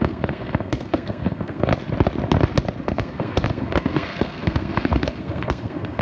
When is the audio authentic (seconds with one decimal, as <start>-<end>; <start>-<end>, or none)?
1.7-2.8